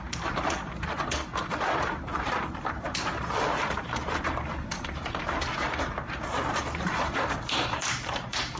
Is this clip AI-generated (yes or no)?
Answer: yes